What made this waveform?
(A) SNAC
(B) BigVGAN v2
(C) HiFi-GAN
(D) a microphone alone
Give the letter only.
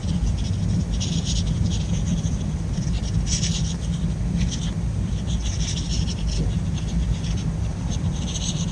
B